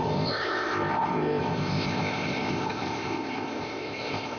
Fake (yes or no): yes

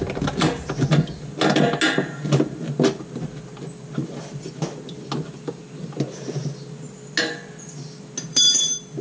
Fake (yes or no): no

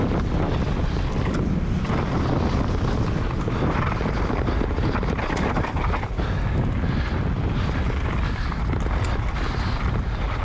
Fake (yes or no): no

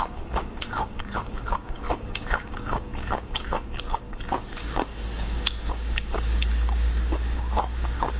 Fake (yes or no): yes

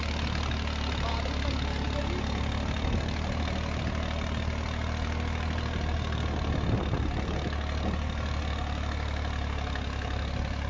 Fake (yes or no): no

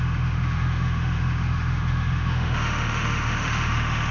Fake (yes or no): yes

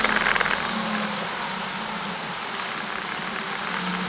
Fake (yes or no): no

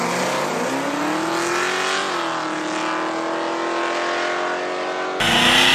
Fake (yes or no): no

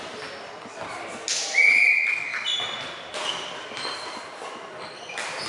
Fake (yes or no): no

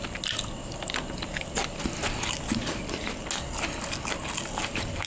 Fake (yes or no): no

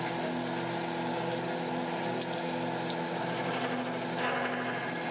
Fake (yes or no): no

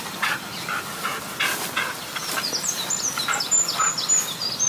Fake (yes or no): no